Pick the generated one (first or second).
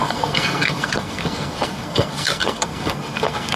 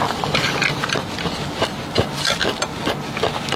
first